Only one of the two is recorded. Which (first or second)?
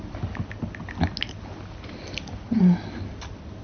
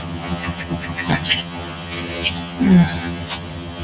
first